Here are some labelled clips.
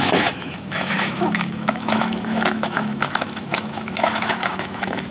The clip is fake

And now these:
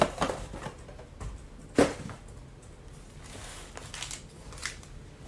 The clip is real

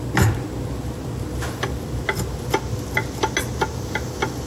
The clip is real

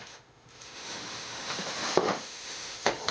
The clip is fake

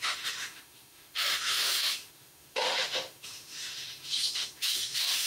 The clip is fake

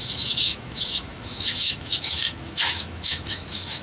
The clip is fake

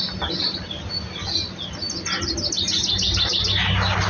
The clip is real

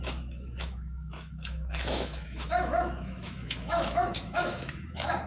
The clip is fake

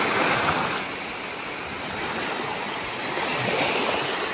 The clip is real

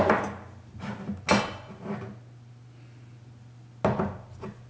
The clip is real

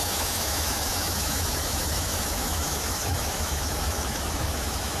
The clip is fake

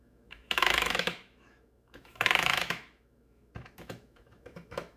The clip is fake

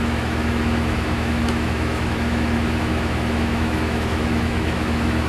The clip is fake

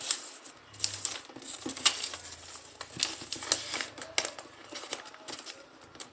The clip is real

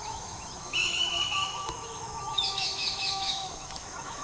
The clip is fake